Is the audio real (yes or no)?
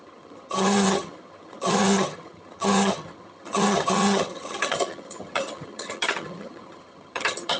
no